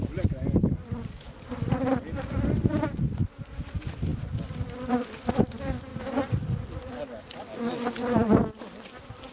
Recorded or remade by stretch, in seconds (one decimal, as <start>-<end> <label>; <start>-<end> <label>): 0.0-9.3 recorded